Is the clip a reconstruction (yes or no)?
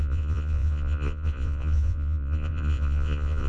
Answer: yes